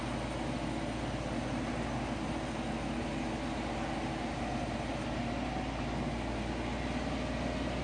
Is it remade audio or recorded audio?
recorded